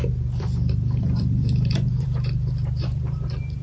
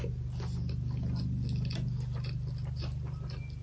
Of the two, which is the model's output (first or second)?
first